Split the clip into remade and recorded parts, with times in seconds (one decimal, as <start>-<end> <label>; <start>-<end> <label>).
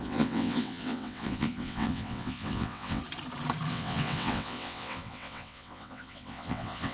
0.0-3.0 remade; 3.0-3.7 recorded; 3.7-6.9 remade